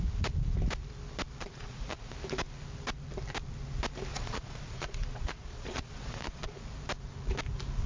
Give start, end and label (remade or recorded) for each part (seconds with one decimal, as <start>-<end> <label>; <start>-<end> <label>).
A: 0.0-1.4 recorded; 1.4-2.1 remade; 2.1-4.1 recorded; 4.1-6.6 remade; 6.6-7.9 recorded